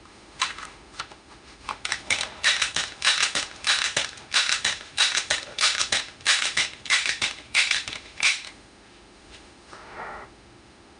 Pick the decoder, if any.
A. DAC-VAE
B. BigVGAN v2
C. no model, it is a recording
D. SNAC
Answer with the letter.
A